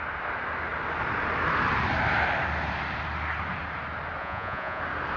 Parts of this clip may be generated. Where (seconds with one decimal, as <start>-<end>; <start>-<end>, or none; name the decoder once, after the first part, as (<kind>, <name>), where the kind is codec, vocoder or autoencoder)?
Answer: 4.2-4.8 (vocoder, Vocos)